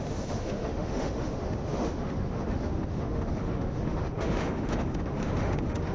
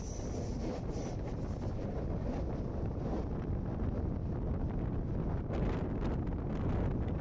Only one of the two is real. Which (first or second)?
second